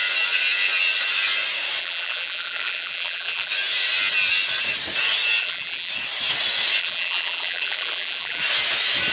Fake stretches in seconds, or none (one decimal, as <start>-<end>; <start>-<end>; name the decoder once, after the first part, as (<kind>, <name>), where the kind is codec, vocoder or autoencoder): 1.8-3.5 (vocoder, BigVGAN v2); 5.4-5.9; 6.8-8.4